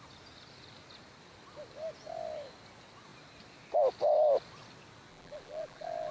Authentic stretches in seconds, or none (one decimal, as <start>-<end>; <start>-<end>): 0.0-5.1